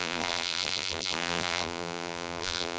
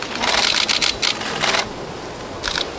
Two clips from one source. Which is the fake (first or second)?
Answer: first